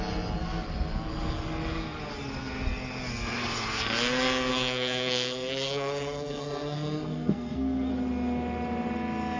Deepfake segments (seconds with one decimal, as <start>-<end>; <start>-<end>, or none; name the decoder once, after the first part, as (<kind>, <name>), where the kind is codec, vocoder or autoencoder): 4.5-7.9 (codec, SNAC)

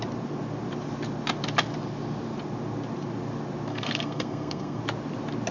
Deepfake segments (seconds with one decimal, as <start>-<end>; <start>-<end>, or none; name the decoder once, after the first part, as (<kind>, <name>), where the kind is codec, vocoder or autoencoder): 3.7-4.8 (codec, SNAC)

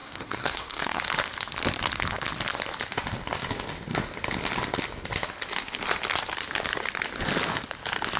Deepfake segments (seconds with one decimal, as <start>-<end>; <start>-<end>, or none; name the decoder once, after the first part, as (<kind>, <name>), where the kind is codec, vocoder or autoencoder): 0.0-1.0 (codec, SNAC)